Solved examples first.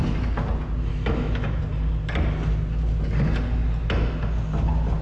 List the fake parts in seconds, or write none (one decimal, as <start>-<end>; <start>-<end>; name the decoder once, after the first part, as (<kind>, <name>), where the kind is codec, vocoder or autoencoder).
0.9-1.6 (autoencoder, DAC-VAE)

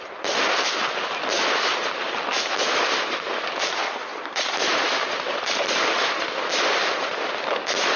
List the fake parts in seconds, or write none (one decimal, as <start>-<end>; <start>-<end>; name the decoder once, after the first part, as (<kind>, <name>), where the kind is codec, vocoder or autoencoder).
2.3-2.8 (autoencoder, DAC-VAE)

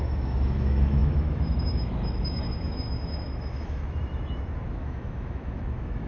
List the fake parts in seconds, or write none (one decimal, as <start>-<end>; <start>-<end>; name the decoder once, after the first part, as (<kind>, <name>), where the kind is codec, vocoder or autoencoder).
0.0-6.1 (autoencoder, DAC-VAE)

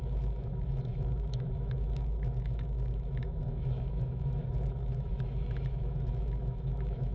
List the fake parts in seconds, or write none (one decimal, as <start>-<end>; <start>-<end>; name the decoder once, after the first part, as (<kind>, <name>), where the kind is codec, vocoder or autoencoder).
0.0-7.1 (autoencoder, DAC-VAE)

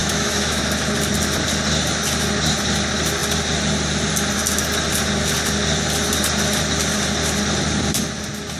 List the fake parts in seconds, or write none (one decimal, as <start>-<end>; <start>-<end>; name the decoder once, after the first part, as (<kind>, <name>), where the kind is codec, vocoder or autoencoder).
0.0-0.6 (autoencoder, DAC-VAE)